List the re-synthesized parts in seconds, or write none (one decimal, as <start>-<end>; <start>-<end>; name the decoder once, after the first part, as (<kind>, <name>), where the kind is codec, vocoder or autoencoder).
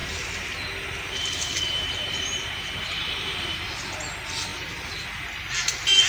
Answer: 0.0-3.7 (vocoder, BigVGAN v2)